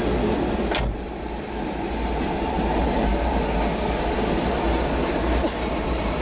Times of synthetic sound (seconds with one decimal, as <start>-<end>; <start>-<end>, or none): none